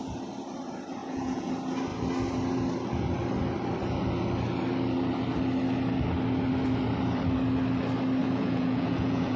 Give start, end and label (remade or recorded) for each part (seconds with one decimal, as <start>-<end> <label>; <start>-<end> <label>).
0.0-1.0 recorded; 1.0-1.5 remade; 1.5-8.2 recorded; 8.2-9.4 remade